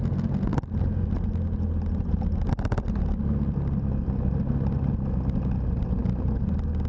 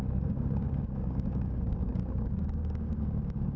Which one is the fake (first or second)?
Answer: second